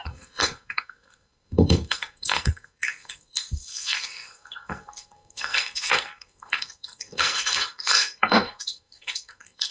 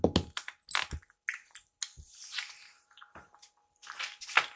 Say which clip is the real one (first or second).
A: second